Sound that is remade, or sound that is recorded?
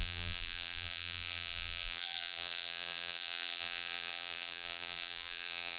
remade